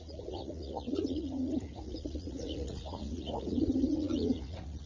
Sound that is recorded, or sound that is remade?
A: remade